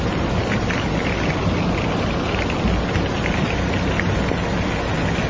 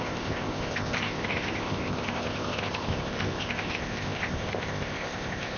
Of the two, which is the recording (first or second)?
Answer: first